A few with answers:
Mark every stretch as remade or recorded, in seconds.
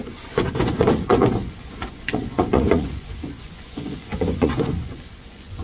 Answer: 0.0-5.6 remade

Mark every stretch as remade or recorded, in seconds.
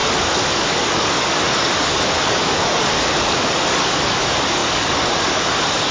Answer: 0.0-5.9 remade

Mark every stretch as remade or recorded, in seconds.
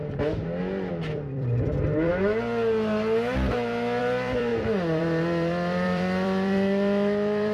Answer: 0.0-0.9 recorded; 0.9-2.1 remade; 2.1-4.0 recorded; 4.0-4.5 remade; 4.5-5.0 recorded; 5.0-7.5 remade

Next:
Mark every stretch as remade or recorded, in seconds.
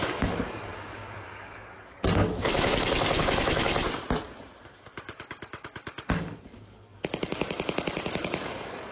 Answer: 0.0-3.7 remade; 3.7-4.7 recorded; 4.7-8.9 remade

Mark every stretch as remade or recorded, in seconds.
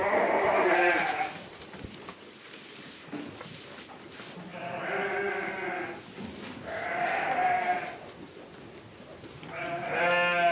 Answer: 0.0-0.7 remade; 0.7-10.5 recorded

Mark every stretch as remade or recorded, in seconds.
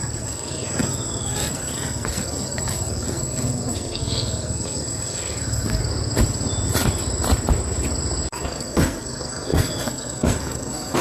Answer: 0.0-5.8 remade; 5.8-8.3 recorded; 8.3-11.0 remade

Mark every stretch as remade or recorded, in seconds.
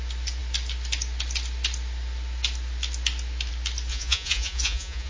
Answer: 0.0-3.9 recorded; 3.9-5.1 remade